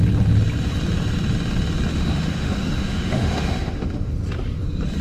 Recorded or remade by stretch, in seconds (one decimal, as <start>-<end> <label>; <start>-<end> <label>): 0.0-1.9 recorded; 1.9-4.1 remade; 4.1-5.0 recorded

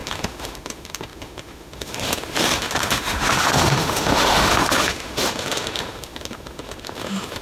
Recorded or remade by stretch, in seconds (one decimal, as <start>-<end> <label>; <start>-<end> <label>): 0.0-7.4 remade